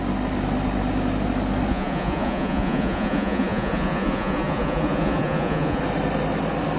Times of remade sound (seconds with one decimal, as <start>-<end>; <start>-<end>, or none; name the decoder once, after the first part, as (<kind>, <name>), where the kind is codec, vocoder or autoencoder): 1.7-5.8 (vocoder, Vocos)